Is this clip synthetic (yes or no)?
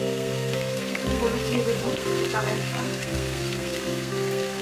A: yes